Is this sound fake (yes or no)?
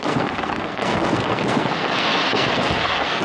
yes